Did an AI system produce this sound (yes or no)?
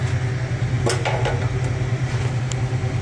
no